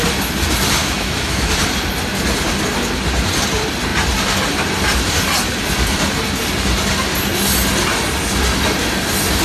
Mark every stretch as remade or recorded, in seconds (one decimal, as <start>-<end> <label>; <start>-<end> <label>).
0.0-0.8 recorded; 0.8-1.5 remade; 1.5-9.4 recorded